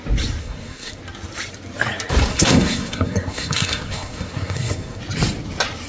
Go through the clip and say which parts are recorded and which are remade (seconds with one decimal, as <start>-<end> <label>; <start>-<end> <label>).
0.0-0.4 recorded; 0.4-1.0 remade; 1.0-2.3 recorded; 2.3-5.0 remade; 5.0-5.9 recorded